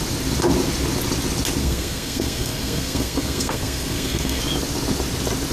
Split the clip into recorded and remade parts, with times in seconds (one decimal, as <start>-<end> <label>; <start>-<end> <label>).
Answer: 0.0-1.6 recorded; 1.6-4.4 remade; 4.4-5.5 recorded

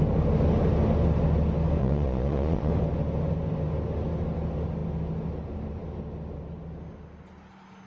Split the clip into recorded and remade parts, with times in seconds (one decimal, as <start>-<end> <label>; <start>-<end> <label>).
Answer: 0.0-1.8 recorded; 1.8-2.7 remade; 2.7-7.9 recorded

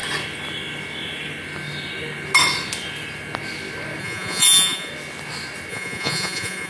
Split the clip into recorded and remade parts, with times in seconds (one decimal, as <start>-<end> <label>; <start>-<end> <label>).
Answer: 0.0-4.0 recorded; 4.0-4.9 remade; 4.9-5.7 recorded; 5.7-6.7 remade

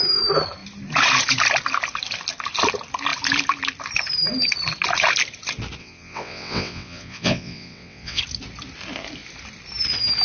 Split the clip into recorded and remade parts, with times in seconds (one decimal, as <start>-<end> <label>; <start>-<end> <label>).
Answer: 0.0-5.8 recorded; 5.8-8.2 remade; 8.2-10.2 recorded

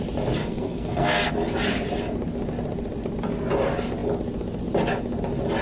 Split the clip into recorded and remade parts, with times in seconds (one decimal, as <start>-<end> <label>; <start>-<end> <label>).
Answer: 0.0-0.4 recorded; 0.4-1.3 remade; 1.3-5.6 recorded

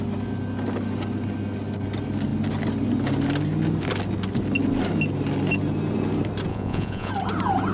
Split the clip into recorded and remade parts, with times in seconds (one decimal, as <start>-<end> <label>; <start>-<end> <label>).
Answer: 0.0-6.5 recorded; 6.5-7.1 remade; 7.1-7.7 recorded

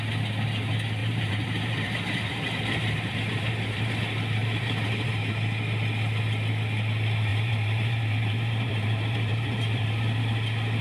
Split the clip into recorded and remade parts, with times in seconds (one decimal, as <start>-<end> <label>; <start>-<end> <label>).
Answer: 0.0-1.0 recorded; 1.0-3.9 remade; 3.9-4.4 recorded; 4.4-5.3 remade; 5.3-7.3 recorded; 7.3-10.2 remade; 10.2-10.8 recorded